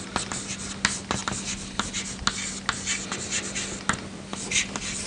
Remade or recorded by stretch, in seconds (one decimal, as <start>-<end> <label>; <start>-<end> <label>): 0.0-5.1 recorded